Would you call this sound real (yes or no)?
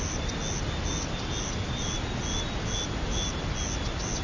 yes